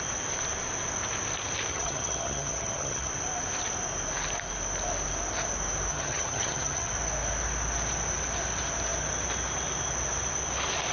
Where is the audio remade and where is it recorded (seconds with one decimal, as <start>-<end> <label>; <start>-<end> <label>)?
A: 0.0-1.7 recorded; 1.7-3.1 remade; 3.1-5.9 recorded; 5.9-6.9 remade; 6.9-10.9 recorded